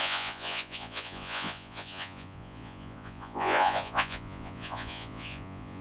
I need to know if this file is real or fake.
fake